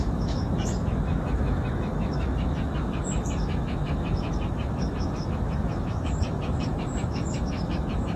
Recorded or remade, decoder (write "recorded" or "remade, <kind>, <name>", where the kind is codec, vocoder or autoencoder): remade, autoencoder, DAC-VAE